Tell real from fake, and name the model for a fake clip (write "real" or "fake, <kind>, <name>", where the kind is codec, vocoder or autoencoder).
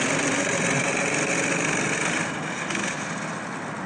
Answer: real